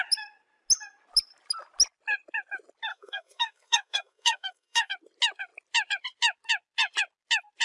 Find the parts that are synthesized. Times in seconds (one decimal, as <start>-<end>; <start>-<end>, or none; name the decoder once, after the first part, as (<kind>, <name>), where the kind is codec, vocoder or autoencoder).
2.9-4.9 (codec, SNAC)

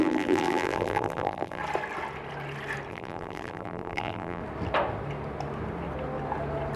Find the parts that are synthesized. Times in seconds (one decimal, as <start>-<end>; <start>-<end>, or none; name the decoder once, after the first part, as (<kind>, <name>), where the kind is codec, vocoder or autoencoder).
0.0-1.6 (vocoder, BigVGAN v2); 2.9-4.4

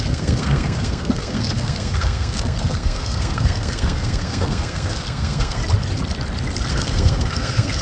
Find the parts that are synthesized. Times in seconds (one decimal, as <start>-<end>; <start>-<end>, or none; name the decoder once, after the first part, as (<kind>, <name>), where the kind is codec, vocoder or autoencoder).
0.0-5.6 (codec, SNAC); 6.7-7.8

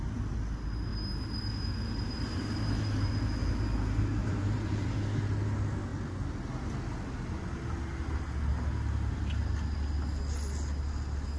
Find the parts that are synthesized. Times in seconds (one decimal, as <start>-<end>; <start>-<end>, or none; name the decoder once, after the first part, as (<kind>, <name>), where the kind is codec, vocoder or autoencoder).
0.9-3.1 (vocoder, BigVGAN v2); 4.2-4.9

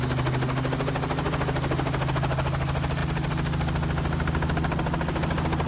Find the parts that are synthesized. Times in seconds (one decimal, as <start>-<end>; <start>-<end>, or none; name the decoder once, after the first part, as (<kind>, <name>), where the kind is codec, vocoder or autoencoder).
none

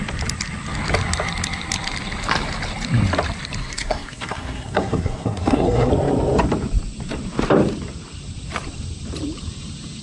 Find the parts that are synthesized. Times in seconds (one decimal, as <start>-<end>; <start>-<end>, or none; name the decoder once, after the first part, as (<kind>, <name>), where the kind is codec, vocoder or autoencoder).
3.6-5.9 (codec, SNAC)

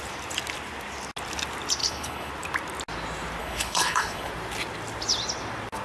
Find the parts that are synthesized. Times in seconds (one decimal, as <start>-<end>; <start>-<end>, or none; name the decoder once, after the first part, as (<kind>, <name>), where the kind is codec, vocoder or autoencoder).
1.8-2.3 (codec, HILCodec); 3.4-4.3

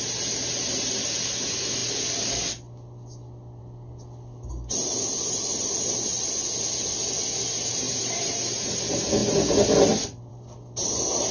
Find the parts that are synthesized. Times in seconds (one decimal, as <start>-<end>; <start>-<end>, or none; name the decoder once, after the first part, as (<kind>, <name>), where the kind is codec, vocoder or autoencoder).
none